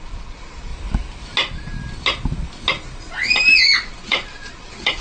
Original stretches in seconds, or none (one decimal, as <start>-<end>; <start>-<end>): 0.7-3.7